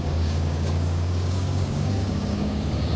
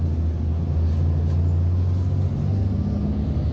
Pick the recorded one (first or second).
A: second